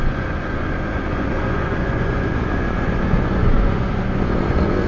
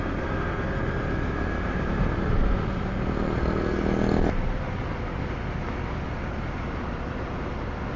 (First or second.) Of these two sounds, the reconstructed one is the first